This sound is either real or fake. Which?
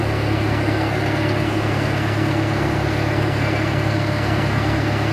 fake